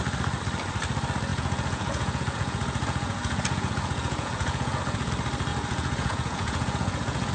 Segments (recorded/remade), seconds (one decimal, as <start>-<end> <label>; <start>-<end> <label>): 0.0-1.3 recorded; 1.3-5.1 remade; 5.1-5.5 recorded; 5.5-7.3 remade